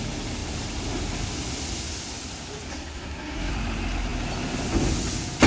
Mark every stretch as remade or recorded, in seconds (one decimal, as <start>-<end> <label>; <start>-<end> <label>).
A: 0.0-2.7 recorded; 2.7-3.5 remade; 3.5-5.5 recorded